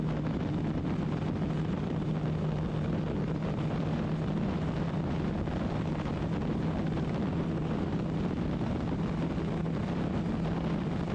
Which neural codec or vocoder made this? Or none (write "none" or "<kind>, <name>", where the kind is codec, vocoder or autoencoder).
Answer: none